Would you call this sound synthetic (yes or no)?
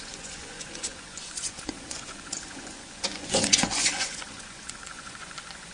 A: yes